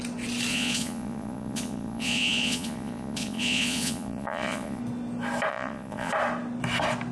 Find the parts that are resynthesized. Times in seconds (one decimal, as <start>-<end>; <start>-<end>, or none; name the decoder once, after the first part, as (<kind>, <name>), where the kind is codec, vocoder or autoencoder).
0.5-4.8 (vocoder, Vocos); 5.5-6.1